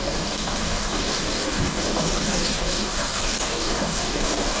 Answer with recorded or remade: remade